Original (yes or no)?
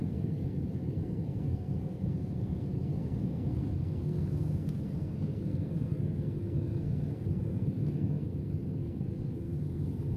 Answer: no